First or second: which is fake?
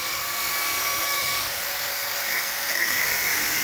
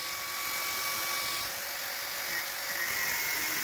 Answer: first